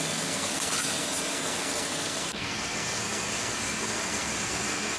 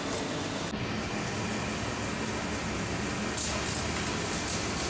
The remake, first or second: first